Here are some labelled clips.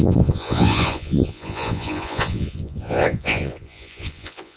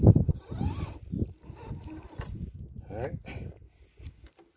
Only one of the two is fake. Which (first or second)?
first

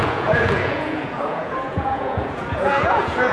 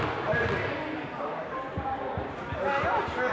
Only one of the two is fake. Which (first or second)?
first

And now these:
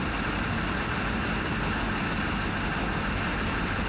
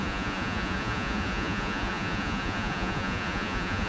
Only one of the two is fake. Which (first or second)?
second